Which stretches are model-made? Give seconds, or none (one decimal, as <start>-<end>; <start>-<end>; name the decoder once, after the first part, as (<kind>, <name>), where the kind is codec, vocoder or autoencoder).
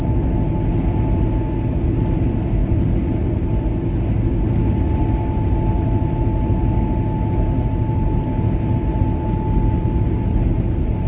none